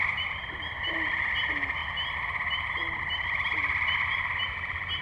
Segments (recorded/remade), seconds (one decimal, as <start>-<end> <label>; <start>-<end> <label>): 0.0-5.0 recorded